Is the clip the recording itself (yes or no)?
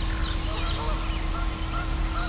yes